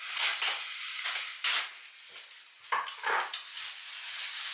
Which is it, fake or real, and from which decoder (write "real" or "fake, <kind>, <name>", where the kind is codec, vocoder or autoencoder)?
real